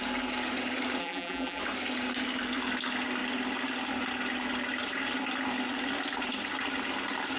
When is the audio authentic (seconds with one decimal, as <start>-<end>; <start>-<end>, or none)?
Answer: 0.0-1.0; 1.6-7.4

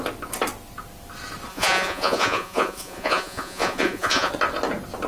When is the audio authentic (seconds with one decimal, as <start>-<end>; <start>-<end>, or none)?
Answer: 0.0-1.5; 4.3-5.1

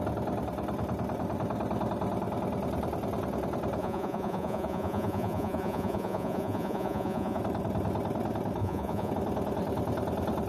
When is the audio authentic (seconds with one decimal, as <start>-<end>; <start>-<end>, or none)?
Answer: 0.0-3.8; 7.4-8.6; 9.1-10.5

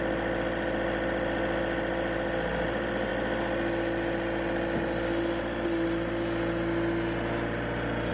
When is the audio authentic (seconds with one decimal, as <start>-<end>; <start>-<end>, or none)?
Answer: 0.0-8.1